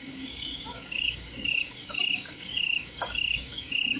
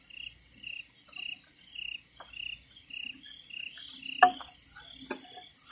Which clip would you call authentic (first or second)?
second